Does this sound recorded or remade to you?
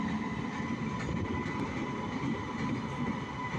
remade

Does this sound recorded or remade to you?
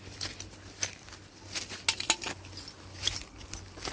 recorded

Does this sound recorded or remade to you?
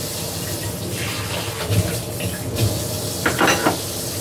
recorded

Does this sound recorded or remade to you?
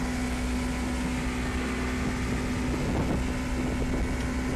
recorded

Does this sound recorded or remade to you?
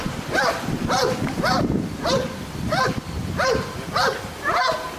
remade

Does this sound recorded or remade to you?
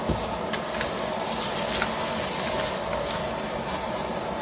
recorded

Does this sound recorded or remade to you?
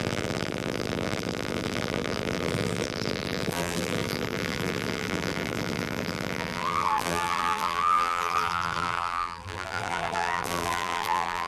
remade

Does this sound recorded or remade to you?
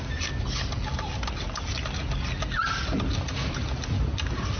recorded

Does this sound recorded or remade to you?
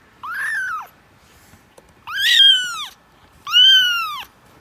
remade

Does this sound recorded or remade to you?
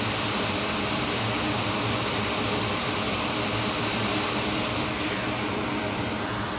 remade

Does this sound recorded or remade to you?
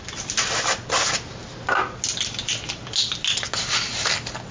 recorded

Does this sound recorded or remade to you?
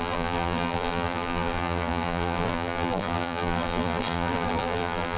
remade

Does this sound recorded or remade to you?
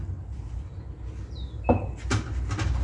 recorded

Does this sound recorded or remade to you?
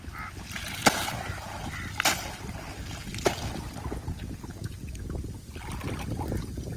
recorded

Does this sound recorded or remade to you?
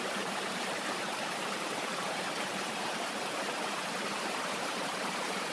remade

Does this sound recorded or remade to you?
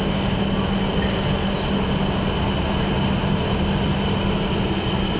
recorded